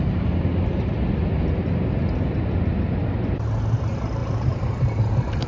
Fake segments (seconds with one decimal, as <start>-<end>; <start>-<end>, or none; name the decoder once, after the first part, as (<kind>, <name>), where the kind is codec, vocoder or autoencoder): 4.2-5.5 (vocoder, BigVGAN v2)